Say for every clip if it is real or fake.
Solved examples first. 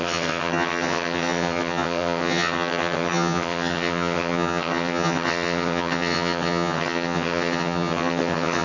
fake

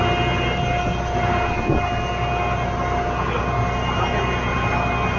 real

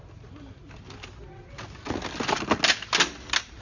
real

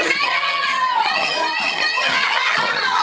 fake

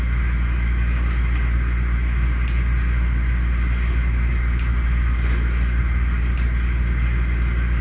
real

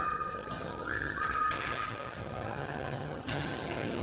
fake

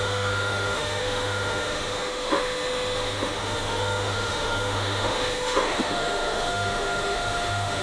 fake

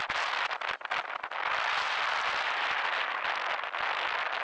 real